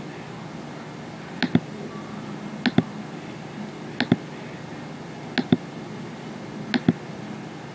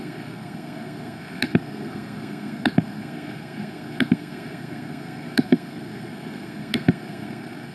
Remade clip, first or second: second